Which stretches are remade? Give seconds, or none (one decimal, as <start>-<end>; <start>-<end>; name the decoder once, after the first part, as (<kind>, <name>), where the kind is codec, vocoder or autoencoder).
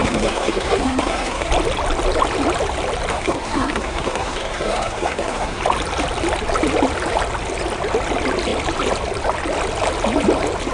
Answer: 0.0-1.5 (codec, SNAC); 3.1-5.6